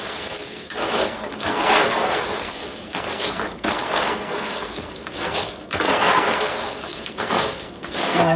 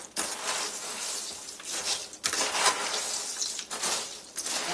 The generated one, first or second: first